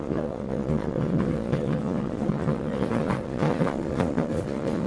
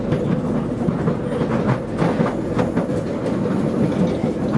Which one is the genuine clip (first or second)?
second